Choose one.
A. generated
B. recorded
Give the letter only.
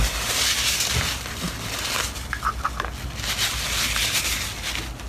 B